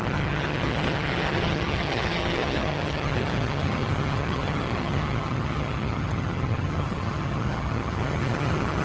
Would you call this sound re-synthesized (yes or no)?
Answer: yes